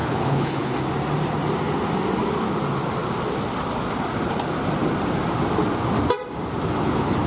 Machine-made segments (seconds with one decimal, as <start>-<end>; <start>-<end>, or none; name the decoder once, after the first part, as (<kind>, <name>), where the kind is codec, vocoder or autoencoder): 0.0-0.7 (codec, HILCodec)